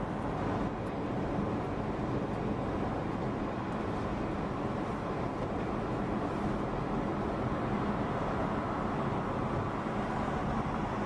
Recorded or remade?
recorded